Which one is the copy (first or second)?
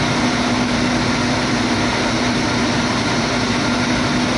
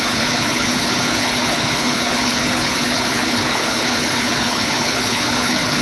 second